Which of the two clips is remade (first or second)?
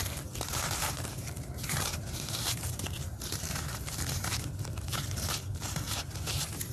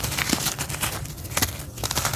first